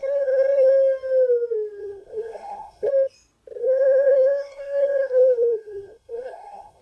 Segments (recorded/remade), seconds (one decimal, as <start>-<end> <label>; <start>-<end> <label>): 0.0-0.7 remade; 0.7-1.8 recorded; 1.8-2.9 remade; 2.9-3.6 recorded; 3.6-6.8 remade